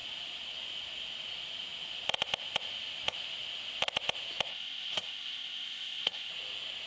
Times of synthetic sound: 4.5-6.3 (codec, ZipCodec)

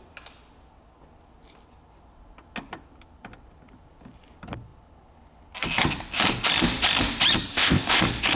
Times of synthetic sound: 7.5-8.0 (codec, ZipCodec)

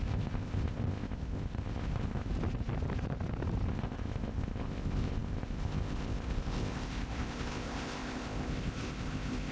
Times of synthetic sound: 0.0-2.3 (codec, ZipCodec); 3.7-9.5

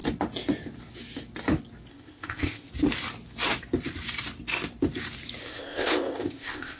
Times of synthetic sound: 1.9-2.7 (codec, ZipCodec); 5.4-6.8